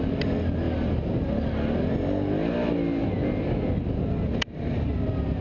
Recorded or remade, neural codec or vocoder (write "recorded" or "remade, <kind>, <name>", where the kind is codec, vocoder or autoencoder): recorded